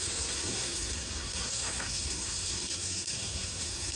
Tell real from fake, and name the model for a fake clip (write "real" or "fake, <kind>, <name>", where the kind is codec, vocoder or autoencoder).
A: fake, codec, SNAC